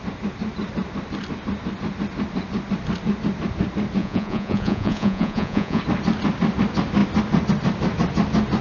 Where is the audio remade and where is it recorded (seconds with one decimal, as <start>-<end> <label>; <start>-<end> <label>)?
0.0-4.0 recorded; 4.0-5.8 remade; 5.8-8.6 recorded